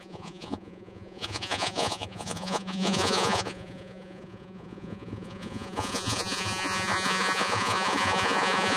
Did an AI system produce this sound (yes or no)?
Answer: yes